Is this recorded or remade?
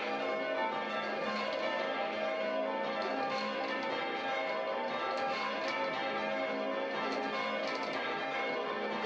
recorded